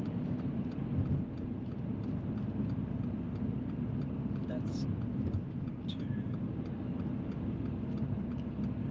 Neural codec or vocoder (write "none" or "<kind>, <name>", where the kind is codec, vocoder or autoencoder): none